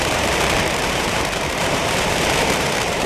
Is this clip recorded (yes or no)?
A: no